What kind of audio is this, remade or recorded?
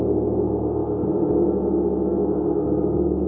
recorded